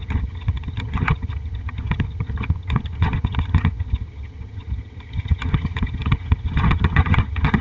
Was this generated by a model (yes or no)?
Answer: yes